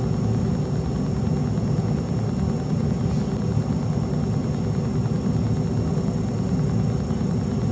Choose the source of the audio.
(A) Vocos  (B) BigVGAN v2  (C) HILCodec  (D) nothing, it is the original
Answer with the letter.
D